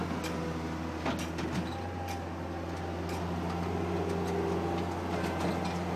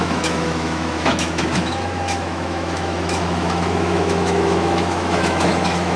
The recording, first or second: first